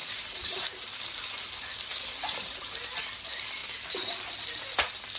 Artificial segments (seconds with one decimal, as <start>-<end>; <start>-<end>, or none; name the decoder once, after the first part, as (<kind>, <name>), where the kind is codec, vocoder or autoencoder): 0.0-3.1 (vocoder, BigVGAN v2)